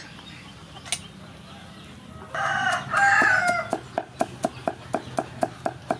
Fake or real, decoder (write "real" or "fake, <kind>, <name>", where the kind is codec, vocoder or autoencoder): real